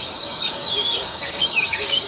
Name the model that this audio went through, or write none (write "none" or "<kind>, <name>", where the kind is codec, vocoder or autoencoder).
codec, DAC